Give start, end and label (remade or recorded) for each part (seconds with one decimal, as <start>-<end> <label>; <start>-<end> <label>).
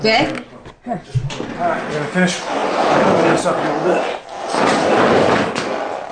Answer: 0.0-6.1 recorded